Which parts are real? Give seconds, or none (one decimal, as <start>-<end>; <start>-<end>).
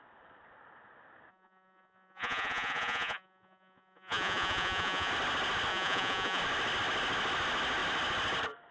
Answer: 0.0-1.3; 5.1-5.7; 6.4-8.7